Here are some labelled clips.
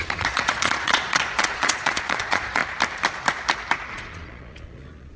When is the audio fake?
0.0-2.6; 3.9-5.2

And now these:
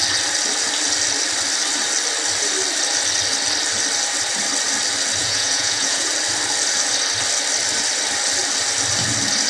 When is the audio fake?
5.2-6.1

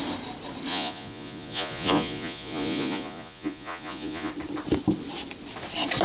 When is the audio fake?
0.7-4.3

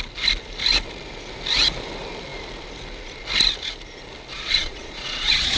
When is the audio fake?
4.3-5.6

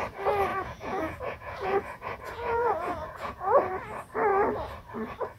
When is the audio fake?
0.5-3.7